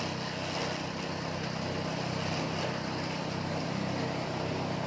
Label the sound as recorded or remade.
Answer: recorded